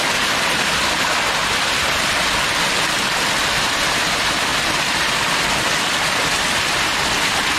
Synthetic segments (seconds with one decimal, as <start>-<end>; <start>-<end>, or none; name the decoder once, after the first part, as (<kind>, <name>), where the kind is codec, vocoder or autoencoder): 1.4-2.8 (vocoder, BigVGAN v2)